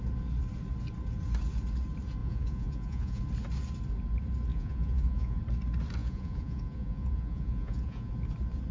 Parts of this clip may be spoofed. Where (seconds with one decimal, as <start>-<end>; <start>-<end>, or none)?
2.2-3.2; 4.5-5.4; 6.0-8.1